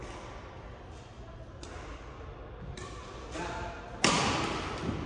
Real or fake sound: real